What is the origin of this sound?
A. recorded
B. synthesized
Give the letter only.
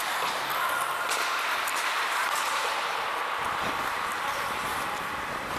A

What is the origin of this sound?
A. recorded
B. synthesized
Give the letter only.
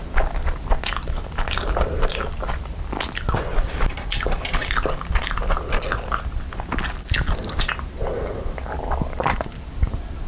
A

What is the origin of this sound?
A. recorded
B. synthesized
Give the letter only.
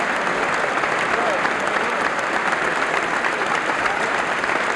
A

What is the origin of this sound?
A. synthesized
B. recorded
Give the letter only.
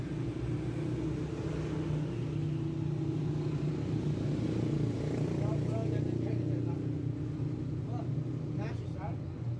B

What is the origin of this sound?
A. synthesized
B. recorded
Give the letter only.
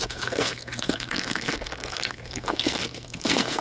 A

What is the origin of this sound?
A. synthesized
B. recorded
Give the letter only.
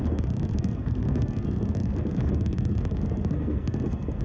A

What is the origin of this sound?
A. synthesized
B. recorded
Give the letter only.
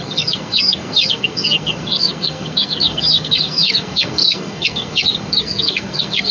A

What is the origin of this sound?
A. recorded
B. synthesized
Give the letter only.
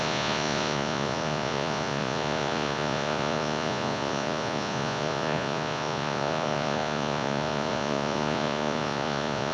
B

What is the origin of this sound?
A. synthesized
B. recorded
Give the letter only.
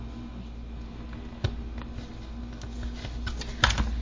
B